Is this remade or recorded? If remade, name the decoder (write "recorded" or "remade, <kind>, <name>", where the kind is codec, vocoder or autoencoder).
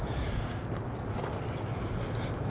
recorded